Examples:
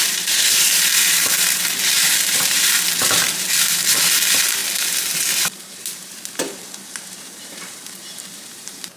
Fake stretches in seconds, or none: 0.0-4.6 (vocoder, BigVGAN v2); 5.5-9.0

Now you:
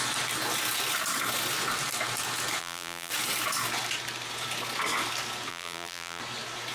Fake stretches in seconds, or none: 2.6-3.1 (vocoder, BigVGAN v2); 5.5-6.2

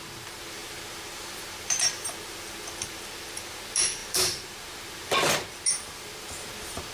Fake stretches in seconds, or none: 0.0-6.9 (vocoder, BigVGAN v2)

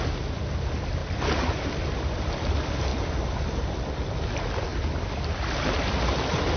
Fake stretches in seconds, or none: 2.9-4.1 (vocoder, BigVGAN v2); 4.7-5.7